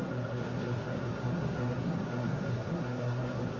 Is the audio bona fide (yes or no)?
no